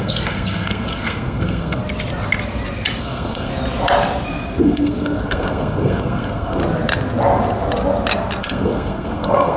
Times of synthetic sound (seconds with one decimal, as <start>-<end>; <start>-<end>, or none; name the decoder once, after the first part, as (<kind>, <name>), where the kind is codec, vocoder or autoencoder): 0.0-1.8 (codec, SNAC); 3.0-3.5; 4.6-6.6; 8.4-9.6

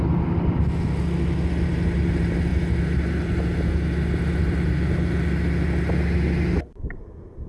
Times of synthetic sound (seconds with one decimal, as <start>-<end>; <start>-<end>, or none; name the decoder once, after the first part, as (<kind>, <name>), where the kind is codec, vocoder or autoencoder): none

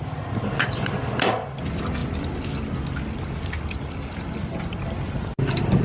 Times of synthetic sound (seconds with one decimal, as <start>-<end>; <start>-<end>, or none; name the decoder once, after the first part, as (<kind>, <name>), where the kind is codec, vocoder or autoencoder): none

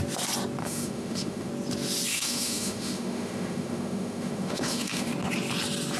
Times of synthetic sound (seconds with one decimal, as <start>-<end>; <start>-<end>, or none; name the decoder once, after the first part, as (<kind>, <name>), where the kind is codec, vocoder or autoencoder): 0.6-1.5 (autoencoder, DAC-VAE); 2.1-5.1

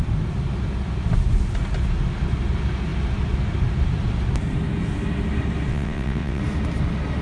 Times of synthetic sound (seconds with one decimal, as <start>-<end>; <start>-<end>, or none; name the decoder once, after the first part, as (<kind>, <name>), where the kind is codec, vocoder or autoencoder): 5.7-6.4 (vocoder, WaveNeXt)